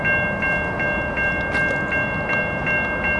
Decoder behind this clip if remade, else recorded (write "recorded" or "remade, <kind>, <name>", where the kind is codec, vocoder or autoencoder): recorded